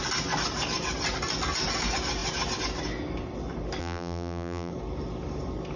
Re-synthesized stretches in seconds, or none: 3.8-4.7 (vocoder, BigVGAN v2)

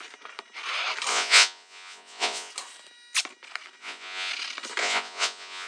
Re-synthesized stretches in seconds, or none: 1.1-2.5 (vocoder, Vocos); 3.8-4.3; 4.8-5.7